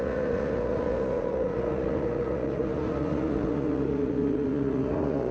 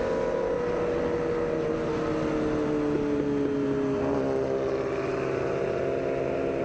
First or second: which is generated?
first